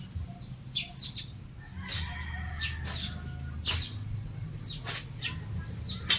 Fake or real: real